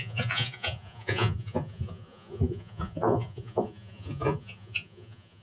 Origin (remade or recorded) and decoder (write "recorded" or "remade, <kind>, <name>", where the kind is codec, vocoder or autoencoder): remade, vocoder, Vocos